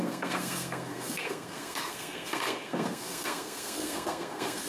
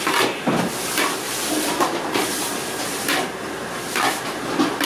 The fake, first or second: first